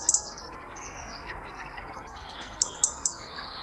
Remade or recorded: remade